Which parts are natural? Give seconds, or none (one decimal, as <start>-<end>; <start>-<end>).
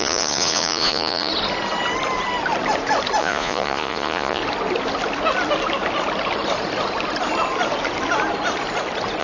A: 1.3-3.2; 4.4-9.2